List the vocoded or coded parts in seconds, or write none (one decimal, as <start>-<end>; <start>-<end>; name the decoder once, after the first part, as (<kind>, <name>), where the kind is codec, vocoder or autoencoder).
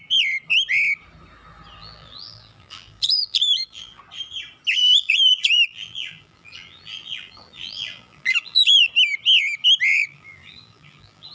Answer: 1.8-4.0 (vocoder, BigVGAN v2); 4.8-8.9; 9.9-11.3